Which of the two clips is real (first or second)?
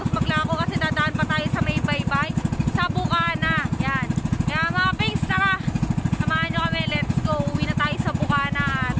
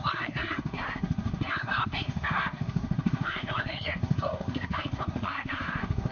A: first